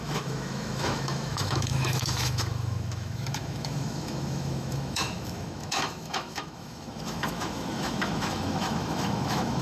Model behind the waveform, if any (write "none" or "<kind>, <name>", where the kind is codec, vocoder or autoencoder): autoencoder, DAC-VAE